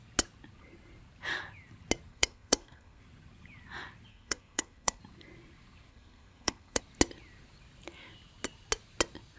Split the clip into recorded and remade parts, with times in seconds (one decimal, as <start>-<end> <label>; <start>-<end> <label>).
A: 0.0-2.1 recorded; 2.1-3.0 remade; 3.0-4.1 recorded; 4.1-5.0 remade; 5.0-5.9 recorded; 5.9-6.8 remade; 6.8-9.4 recorded

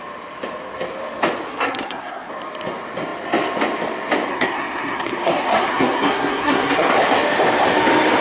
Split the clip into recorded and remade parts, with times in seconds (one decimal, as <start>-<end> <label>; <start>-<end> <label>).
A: 0.0-1.5 recorded; 1.5-2.3 remade; 2.3-4.3 recorded; 4.3-6.9 remade; 6.9-8.2 recorded

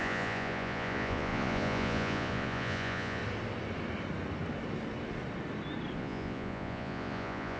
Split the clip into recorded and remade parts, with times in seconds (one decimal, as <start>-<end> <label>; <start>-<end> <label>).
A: 0.0-3.2 remade; 3.2-6.0 recorded; 6.0-7.6 remade

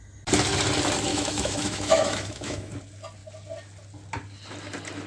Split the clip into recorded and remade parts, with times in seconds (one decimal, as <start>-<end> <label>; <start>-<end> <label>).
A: 0.0-1.1 recorded; 1.1-2.7 remade; 2.7-5.1 recorded

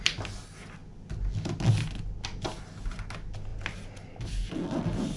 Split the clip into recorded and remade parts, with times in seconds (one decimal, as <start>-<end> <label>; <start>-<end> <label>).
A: 0.0-5.2 recorded

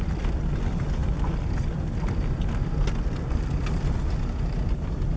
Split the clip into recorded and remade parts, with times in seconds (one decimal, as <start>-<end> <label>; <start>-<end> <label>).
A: 0.0-5.2 recorded